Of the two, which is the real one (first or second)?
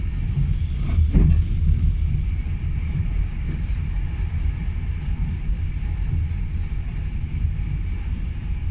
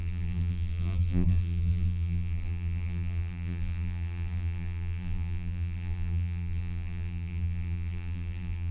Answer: first